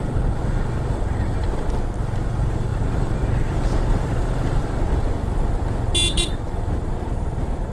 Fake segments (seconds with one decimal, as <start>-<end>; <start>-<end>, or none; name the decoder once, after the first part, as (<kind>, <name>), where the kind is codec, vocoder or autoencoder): none